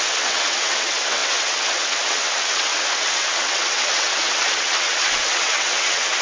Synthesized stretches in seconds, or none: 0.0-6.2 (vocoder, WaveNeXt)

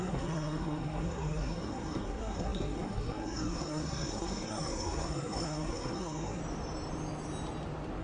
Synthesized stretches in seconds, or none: 0.0-6.4 (codec, SNAC)

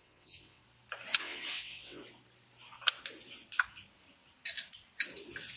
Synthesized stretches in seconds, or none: 0.0-0.6 (vocoder, WaveNeXt); 1.2-2.0

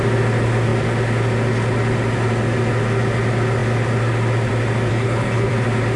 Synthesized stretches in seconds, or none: 4.9-5.5 (codec, HILCodec)

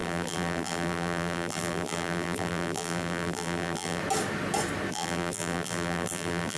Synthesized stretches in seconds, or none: 0.0-4.0 (vocoder, BigVGAN v2); 4.9-6.6

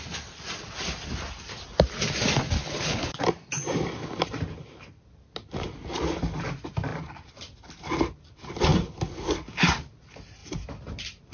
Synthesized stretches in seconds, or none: 2.6-3.2 (codec, HILCodec)

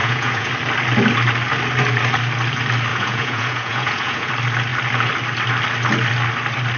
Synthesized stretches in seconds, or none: 0.0-0.5 (vocoder, Vocos); 2.9-4.3